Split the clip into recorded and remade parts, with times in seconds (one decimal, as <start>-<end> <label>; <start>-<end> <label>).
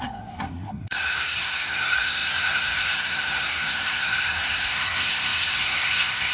0.0-6.3 remade